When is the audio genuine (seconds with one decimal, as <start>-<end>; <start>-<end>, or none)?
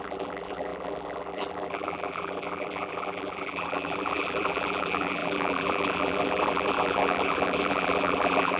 none